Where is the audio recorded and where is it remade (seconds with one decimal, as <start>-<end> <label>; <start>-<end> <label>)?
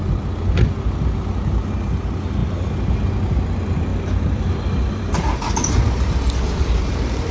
0.0-1.7 remade; 1.7-3.9 recorded; 3.9-7.3 remade